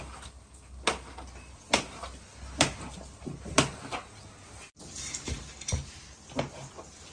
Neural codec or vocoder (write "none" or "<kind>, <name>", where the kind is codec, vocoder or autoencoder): none